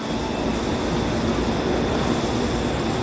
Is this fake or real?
real